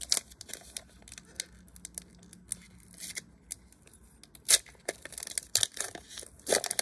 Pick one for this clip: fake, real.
real